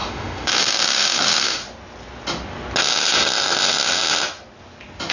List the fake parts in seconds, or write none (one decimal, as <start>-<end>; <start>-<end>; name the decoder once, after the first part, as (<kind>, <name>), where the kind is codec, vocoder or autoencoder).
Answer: 0.0-1.6 (autoencoder, DAC-VAE)